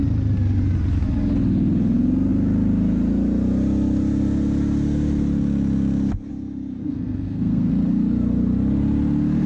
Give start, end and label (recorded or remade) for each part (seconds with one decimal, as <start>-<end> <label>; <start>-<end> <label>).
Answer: 0.0-6.8 recorded; 6.8-7.7 remade; 7.7-9.5 recorded